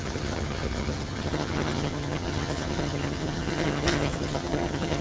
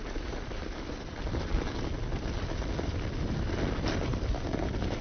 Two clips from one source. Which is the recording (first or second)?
second